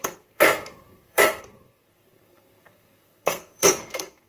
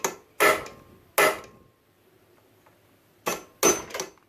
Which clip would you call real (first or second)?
second